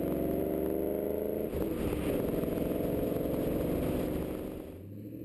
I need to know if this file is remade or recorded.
recorded